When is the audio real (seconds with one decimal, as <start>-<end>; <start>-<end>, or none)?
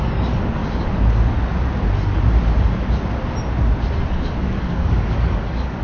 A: 0.6-4.1